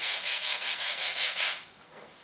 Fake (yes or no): yes